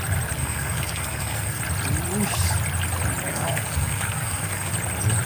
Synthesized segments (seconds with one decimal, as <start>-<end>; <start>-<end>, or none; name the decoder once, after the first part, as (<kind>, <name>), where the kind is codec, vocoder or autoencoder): 0.4-1.6 (codec, SNAC); 3.3-4.7